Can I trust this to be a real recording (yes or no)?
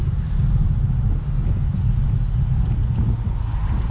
yes